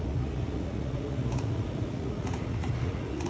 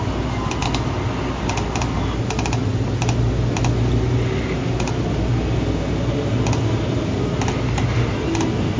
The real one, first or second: second